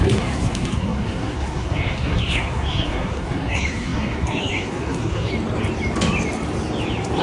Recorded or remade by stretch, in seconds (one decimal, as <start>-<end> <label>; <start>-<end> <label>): 0.0-5.3 remade; 5.3-7.2 recorded